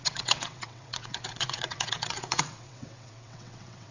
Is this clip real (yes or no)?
no